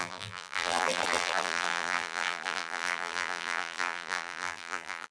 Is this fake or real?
fake